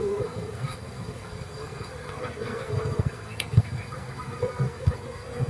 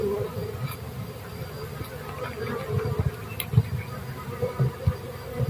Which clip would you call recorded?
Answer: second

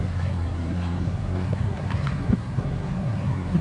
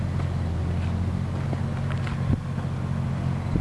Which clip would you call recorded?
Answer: second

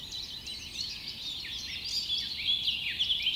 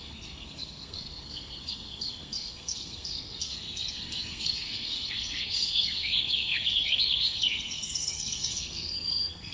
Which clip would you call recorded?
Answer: first